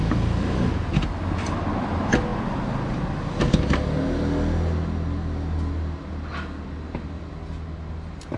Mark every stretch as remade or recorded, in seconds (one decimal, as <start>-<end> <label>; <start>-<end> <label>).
0.0-8.4 recorded